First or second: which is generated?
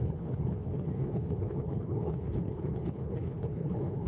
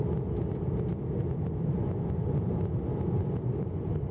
first